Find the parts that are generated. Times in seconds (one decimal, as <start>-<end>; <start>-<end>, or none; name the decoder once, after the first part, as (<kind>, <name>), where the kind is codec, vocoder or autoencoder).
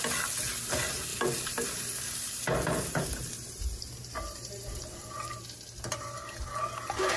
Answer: 1.1-5.4 (vocoder, BigVGAN v2)